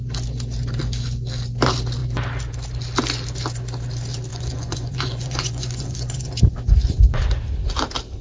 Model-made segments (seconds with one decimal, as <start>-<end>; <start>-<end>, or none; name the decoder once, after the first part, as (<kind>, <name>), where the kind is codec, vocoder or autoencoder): 4.3-6.4 (vocoder, Vocos)